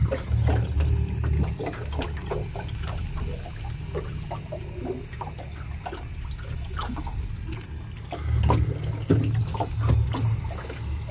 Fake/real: real